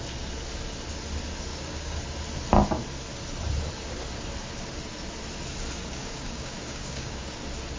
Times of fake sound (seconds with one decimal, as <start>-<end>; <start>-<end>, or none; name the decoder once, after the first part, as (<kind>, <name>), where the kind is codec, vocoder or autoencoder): 1.5-2.0 (codec, DAC); 5.8-7.3